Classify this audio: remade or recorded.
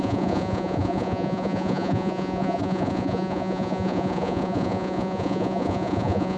remade